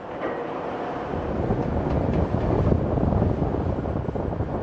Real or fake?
real